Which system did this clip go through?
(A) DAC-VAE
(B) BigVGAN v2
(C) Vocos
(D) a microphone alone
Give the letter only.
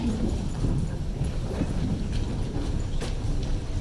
B